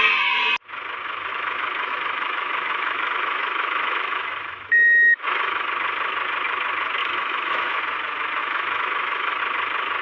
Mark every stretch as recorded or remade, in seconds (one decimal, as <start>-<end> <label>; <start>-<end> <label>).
0.0-1.0 recorded; 1.0-5.7 remade; 5.7-7.0 recorded; 7.0-7.8 remade; 7.8-8.4 recorded; 8.4-9.4 remade; 9.4-10.0 recorded